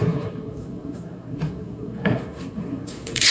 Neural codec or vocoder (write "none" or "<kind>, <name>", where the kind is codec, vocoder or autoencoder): codec, SNAC